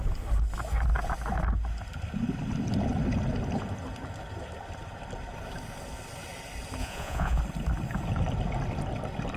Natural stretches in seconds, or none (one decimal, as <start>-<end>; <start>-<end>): 0.0-6.8; 7.4-9.4